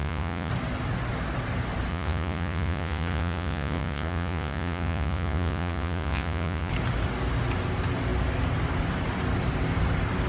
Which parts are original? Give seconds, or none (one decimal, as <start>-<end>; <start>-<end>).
0.5-1.9; 6.7-10.3